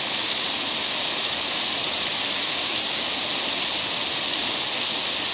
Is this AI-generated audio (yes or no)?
no